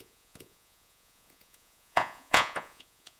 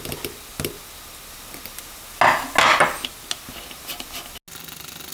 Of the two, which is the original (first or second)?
second